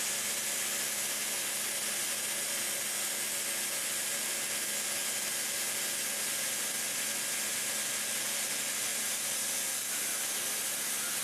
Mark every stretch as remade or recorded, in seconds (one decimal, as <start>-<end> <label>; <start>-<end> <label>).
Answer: 0.0-8.9 recorded; 8.9-9.7 remade; 9.7-11.2 recorded